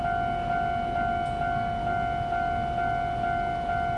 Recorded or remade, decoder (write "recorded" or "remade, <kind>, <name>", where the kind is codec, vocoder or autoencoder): recorded